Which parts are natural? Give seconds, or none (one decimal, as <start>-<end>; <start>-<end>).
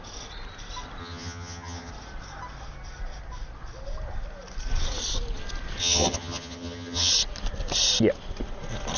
0.0-1.0; 1.9-5.8; 7.1-9.0